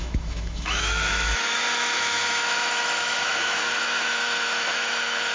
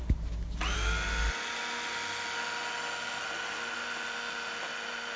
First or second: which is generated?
first